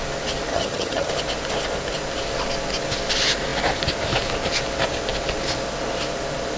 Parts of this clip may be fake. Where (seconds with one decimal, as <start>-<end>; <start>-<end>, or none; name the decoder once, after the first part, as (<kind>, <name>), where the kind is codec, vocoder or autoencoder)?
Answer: 0.5-1.1 (vocoder, HiFi-GAN)